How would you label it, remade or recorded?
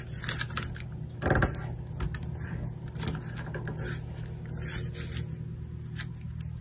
recorded